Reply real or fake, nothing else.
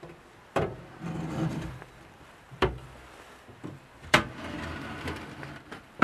fake